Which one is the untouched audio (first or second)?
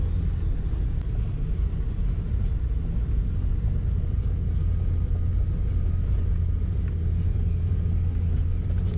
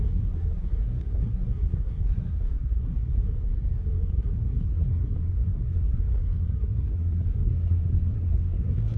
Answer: first